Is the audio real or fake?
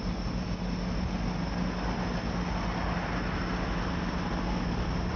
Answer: real